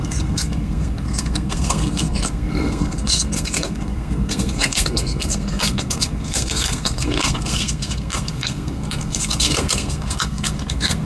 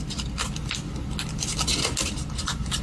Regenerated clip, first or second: first